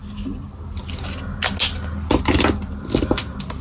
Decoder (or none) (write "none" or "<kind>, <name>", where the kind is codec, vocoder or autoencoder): none